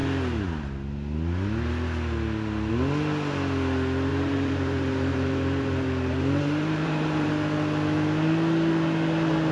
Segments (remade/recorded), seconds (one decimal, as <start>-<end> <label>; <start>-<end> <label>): 0.0-4.1 recorded; 4.1-7.3 remade; 7.3-9.5 recorded